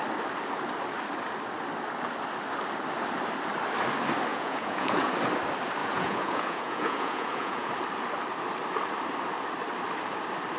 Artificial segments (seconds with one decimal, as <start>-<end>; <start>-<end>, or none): 4.3-5.1; 5.8-7.7